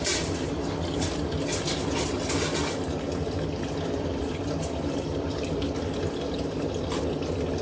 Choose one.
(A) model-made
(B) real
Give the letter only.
B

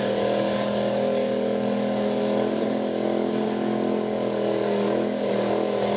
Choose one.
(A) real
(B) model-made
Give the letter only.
B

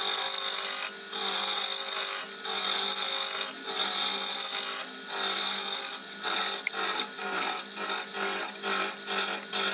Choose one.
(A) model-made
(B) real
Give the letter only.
B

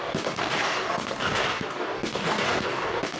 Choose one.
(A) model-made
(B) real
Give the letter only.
A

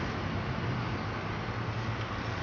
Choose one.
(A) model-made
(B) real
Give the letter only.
B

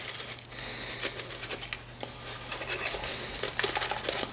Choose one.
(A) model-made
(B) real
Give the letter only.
B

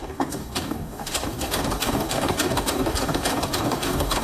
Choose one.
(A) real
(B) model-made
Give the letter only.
B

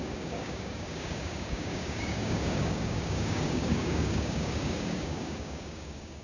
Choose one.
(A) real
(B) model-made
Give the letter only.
B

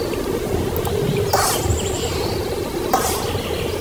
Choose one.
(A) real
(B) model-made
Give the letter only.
A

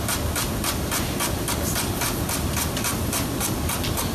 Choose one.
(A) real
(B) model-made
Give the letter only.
A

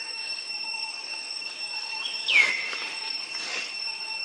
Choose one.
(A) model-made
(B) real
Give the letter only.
A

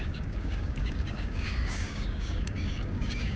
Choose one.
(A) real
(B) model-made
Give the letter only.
B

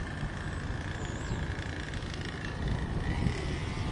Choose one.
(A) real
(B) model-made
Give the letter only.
A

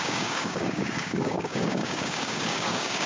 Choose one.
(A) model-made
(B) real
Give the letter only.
A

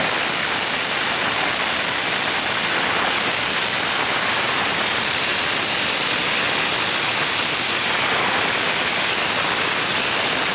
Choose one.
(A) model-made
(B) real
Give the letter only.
B